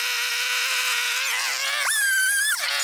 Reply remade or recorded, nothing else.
recorded